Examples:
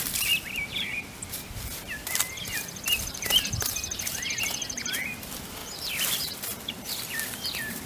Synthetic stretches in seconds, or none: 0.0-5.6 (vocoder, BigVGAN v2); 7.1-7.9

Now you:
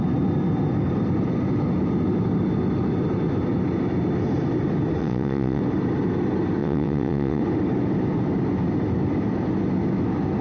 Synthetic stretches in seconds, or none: 5.0-5.6 (vocoder, WaveNeXt); 6.6-7.4

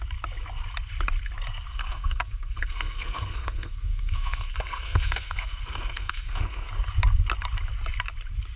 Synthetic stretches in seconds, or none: 1.7-6.7 (codec, SNAC)

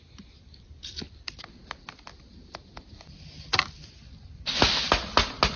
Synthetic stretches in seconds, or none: none